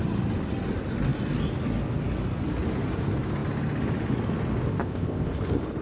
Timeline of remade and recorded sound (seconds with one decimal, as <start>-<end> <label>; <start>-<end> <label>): 0.0-4.7 recorded; 4.7-5.3 remade; 5.3-5.8 recorded